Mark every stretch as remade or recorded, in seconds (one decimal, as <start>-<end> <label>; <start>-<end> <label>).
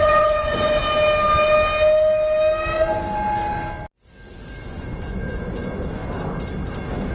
0.0-0.8 remade; 0.8-4.6 recorded; 4.6-6.0 remade; 6.0-7.1 recorded